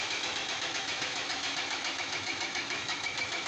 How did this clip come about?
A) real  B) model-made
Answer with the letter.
B